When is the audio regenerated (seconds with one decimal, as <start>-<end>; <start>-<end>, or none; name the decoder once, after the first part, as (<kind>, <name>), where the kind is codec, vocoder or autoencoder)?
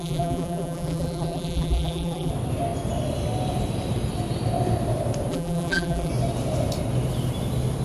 0.0-2.3 (vocoder, BigVGAN v2); 5.3-6.1